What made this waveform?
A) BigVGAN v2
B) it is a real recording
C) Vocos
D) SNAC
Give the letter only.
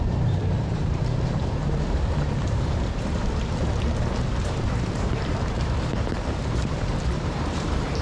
A